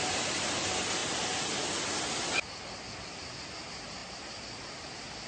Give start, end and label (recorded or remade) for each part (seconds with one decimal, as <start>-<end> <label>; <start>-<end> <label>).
0.0-5.3 recorded